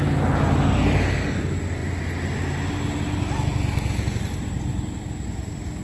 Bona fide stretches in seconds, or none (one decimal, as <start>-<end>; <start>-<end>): 0.0-5.8